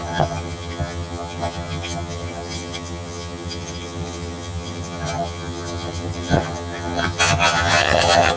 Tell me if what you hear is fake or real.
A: fake